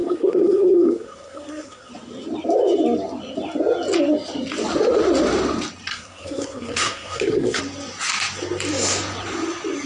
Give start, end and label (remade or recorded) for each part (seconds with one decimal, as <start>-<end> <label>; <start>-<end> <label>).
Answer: 0.0-1.9 remade; 1.9-5.9 recorded; 5.9-7.6 remade; 7.6-9.9 recorded